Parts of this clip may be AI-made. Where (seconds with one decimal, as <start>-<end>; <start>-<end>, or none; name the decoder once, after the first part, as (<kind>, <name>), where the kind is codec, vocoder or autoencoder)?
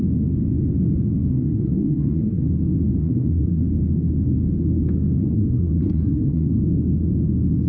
1.3-2.4 (codec, SNAC); 3.0-3.6; 5.2-6.6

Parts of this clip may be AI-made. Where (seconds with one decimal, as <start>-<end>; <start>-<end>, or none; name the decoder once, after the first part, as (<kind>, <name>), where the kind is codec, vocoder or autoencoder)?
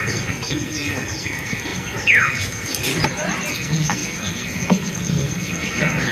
0.0-2.9 (codec, SNAC); 3.5-6.1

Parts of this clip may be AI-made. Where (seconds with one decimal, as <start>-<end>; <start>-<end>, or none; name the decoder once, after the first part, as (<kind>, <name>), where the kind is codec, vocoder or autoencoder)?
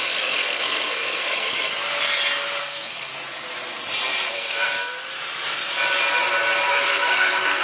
0.0-1.7 (codec, SNAC); 2.6-3.1; 4.3-4.7; 6.7-7.6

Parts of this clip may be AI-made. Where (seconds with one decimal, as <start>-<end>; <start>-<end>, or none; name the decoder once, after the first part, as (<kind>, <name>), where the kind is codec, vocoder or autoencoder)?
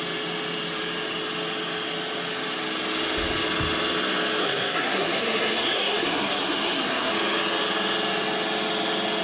4.4-7.1 (codec, SNAC)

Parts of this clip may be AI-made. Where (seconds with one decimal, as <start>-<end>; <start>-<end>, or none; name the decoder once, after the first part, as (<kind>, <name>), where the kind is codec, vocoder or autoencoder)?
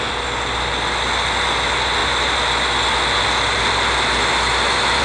none